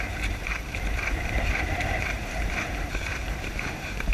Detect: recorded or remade remade